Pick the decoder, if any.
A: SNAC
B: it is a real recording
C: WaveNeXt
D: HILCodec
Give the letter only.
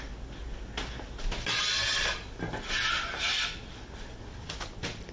B